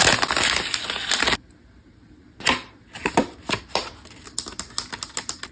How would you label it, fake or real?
real